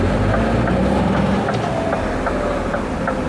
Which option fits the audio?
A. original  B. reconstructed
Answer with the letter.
A